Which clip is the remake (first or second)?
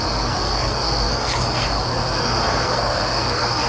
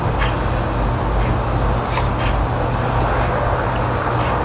first